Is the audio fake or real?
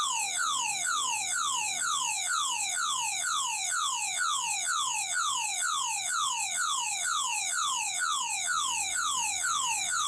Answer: fake